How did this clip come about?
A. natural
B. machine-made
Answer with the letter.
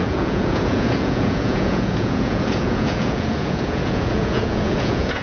B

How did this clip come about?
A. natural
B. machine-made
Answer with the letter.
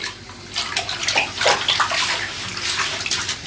A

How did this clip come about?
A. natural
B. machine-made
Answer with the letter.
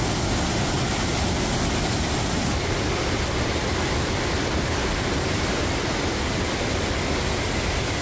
A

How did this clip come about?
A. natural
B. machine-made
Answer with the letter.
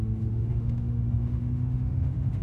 B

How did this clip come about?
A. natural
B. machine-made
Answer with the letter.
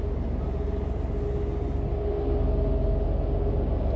A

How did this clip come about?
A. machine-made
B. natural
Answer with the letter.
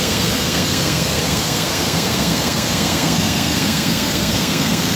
A